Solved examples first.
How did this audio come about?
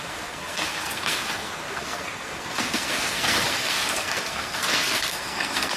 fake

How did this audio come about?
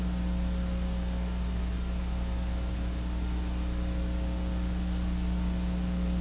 real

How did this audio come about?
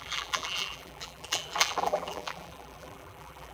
fake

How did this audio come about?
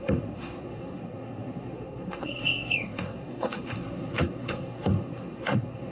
fake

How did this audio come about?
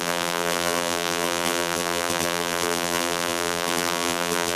fake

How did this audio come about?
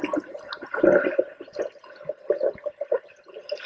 real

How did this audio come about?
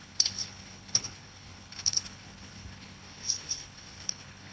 fake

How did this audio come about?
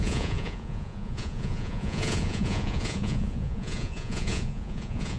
fake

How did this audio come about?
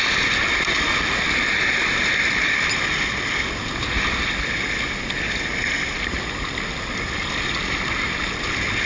real